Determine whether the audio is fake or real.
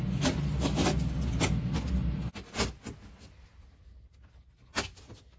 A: real